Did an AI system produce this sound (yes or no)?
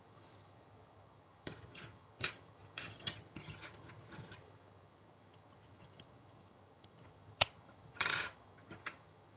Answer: yes